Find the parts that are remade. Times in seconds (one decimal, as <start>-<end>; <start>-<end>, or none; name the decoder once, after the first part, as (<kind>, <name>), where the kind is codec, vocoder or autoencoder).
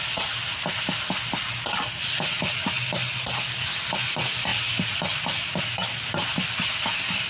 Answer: none